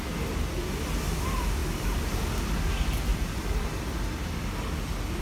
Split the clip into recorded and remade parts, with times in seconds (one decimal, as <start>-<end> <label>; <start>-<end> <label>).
0.0-1.6 recorded; 1.6-2.2 remade; 2.2-3.1 recorded; 3.1-3.7 remade; 3.7-5.2 recorded